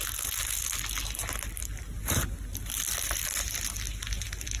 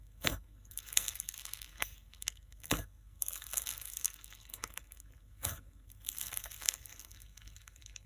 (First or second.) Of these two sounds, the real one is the first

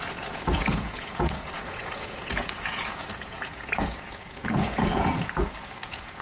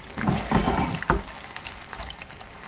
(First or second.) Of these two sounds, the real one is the second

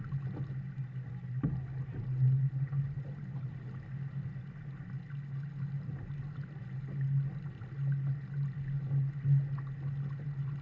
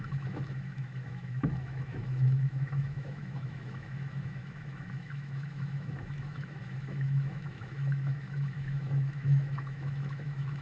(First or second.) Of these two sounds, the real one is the first